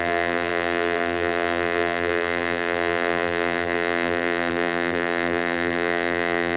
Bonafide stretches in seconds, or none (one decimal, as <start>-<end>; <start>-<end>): none

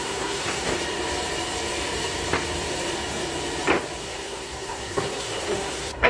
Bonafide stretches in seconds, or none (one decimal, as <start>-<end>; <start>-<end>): 0.7-4.0

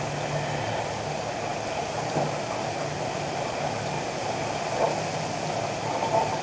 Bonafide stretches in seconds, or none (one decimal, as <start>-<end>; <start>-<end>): 0.0-6.4

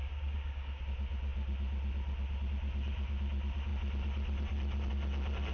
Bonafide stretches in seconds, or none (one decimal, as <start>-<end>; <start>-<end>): 0.8-5.5

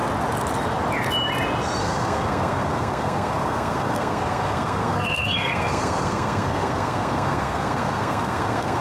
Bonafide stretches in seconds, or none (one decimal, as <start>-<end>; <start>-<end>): 0.0-1.8

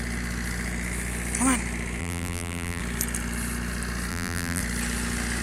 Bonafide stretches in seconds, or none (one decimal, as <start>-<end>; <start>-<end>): 0.0-2.0; 2.8-4.1; 4.6-5.4

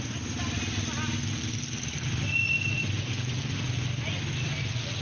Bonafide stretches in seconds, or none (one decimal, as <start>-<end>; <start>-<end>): 0.0-5.0